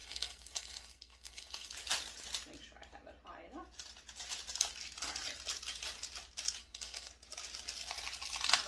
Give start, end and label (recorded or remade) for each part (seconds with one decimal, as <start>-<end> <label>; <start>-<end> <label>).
0.0-1.7 remade; 1.7-6.6 recorded; 6.6-7.1 remade; 7.1-8.7 recorded

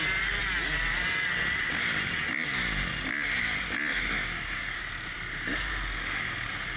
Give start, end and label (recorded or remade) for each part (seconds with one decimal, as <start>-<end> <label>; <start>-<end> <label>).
0.0-3.9 recorded; 3.9-4.9 remade; 4.9-6.8 recorded

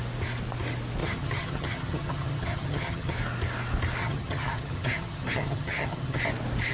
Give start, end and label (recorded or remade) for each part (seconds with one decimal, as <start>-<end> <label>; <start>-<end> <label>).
0.0-1.0 recorded; 1.0-3.1 remade; 3.1-4.0 recorded; 4.0-6.2 remade; 6.2-6.7 recorded